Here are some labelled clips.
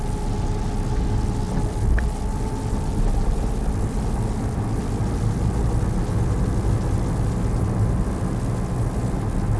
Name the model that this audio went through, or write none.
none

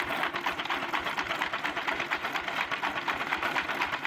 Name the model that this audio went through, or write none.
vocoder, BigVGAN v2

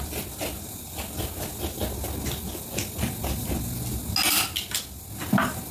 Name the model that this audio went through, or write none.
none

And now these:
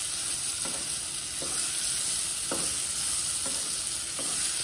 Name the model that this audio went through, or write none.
none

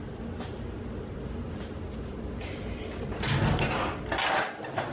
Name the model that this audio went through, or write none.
none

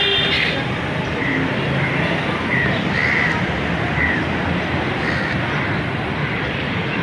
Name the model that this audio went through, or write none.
vocoder, BigVGAN v2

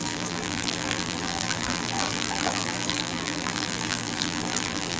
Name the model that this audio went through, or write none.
vocoder, BigVGAN v2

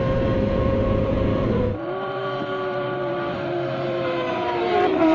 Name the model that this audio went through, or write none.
vocoder, BigVGAN v2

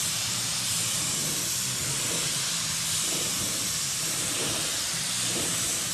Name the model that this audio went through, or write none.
vocoder, BigVGAN v2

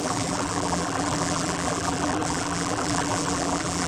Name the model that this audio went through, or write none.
vocoder, BigVGAN v2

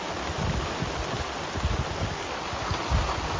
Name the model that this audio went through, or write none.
none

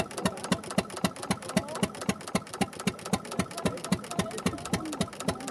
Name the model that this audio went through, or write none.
none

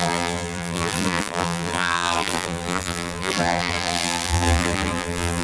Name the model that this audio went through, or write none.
vocoder, BigVGAN v2